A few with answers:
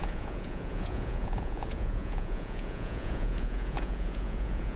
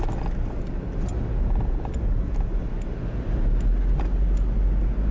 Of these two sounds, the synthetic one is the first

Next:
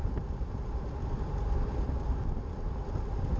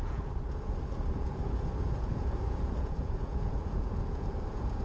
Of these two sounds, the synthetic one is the second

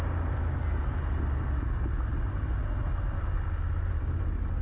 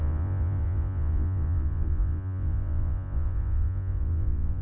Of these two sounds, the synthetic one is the second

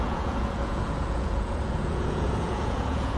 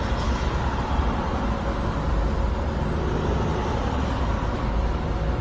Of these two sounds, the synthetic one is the first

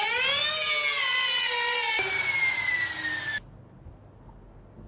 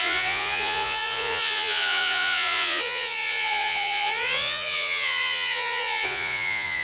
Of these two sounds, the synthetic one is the second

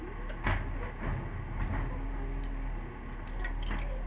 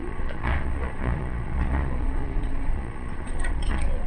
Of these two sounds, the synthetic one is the second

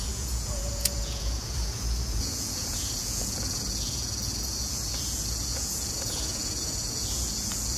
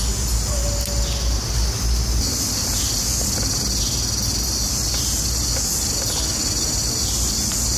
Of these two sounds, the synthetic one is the first